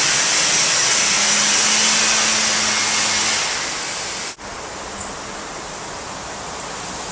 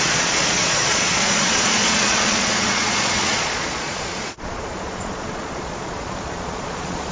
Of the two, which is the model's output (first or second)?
second